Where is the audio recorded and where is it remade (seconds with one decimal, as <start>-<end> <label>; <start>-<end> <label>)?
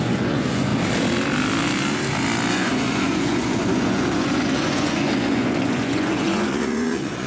0.0-0.7 remade; 0.7-2.5 recorded; 2.5-7.3 remade